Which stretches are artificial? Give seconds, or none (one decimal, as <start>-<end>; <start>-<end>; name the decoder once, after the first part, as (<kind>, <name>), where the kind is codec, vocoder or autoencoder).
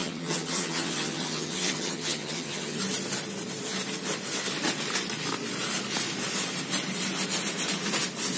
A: 0.0-2.8 (vocoder, HiFi-GAN)